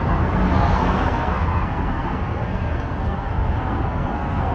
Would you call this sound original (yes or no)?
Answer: no